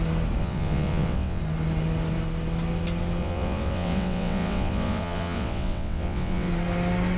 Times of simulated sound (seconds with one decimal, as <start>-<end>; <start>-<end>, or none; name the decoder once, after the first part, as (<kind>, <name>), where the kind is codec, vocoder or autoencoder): 0.4-1.4 (vocoder, WaveNeXt); 3.2-6.5